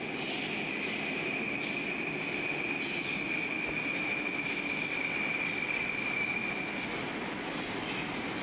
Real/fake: real